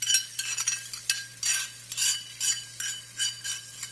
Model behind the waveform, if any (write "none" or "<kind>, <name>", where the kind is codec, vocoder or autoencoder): none